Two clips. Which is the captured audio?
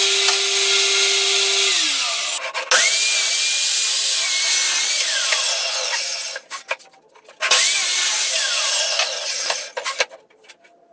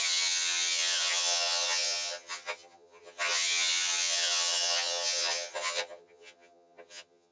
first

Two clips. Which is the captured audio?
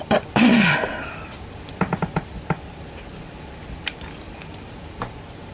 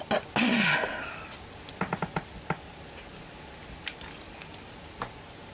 second